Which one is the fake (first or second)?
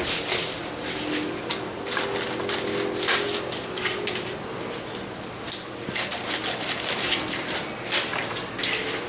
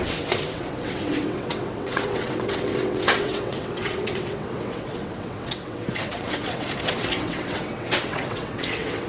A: second